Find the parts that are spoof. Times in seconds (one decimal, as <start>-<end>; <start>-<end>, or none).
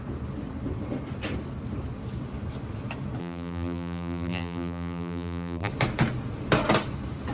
3.2-5.7